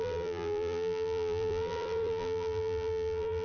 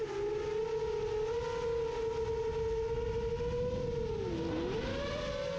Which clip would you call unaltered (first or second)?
second